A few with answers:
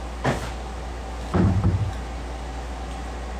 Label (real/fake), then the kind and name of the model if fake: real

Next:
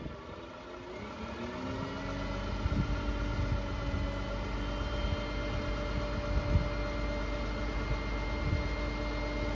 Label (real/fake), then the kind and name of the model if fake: real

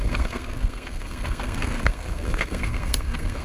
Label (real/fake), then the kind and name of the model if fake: fake, codec, SNAC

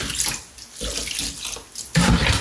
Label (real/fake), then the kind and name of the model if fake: real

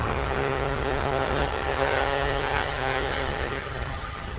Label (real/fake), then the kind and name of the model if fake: fake, vocoder, HiFi-GAN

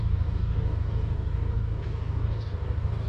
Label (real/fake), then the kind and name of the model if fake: fake, codec, DAC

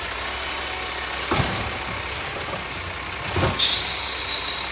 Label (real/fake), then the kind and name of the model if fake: real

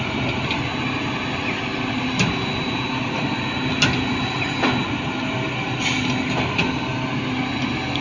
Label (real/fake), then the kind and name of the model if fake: real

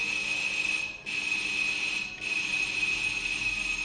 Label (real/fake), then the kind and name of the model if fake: real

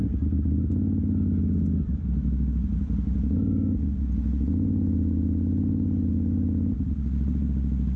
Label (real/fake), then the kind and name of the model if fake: real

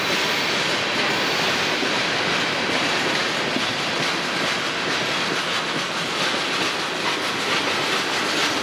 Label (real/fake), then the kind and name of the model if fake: real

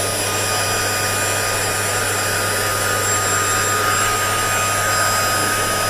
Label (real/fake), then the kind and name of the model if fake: real